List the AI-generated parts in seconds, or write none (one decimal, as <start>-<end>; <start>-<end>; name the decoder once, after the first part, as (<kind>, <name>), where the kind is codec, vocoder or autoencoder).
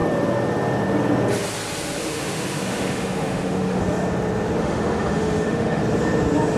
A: 2.0-3.8 (autoencoder, DAC-VAE); 4.6-5.8